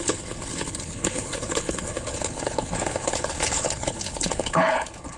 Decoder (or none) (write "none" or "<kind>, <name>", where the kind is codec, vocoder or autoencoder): codec, HILCodec